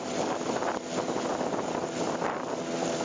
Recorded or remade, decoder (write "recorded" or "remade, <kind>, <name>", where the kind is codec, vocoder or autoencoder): recorded